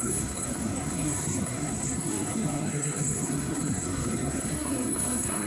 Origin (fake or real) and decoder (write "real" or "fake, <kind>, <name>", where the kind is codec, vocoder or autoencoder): fake, codec, SNAC